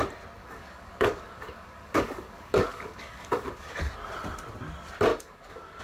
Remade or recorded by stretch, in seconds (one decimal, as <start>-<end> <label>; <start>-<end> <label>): 0.0-0.4 recorded; 0.4-3.9 remade; 3.9-5.1 recorded; 5.1-5.8 remade